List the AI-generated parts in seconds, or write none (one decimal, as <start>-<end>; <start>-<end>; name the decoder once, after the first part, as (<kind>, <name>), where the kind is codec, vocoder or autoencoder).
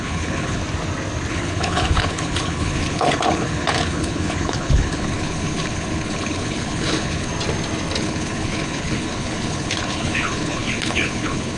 0.0-0.6 (codec, HILCodec); 1.3-7.3; 8.0-11.6